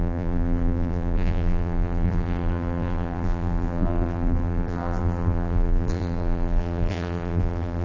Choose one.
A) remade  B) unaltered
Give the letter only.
A